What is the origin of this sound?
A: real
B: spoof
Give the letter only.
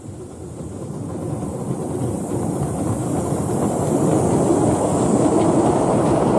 A